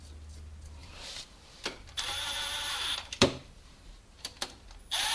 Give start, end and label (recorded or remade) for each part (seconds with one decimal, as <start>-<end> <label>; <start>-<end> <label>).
0.0-0.8 recorded; 0.8-3.9 remade; 3.9-5.1 recorded